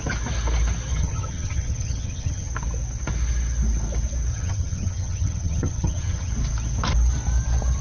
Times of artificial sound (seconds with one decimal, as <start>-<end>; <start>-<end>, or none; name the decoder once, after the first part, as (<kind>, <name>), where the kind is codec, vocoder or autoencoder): 0.9-2.5 (vocoder, HiFi-GAN); 4.3-6.3